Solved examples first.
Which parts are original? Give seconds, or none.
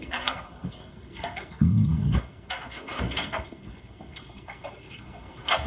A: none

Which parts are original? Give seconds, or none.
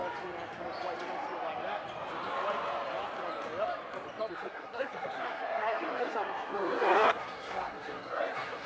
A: 0.0-4.3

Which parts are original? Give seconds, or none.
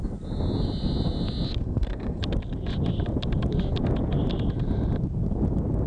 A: 0.0-1.6; 2.2-5.9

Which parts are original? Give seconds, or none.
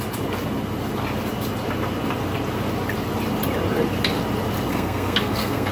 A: 0.0-4.7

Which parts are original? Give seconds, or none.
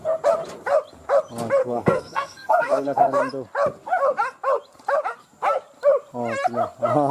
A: 0.0-1.6; 3.2-7.1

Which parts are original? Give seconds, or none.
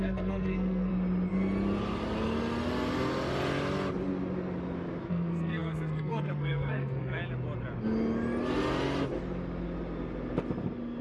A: 0.9-5.1; 7.2-11.0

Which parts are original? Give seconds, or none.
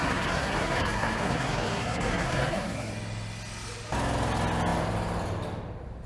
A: 2.9-6.1